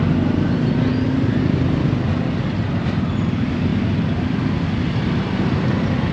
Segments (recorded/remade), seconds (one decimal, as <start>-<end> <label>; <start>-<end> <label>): 0.0-6.1 recorded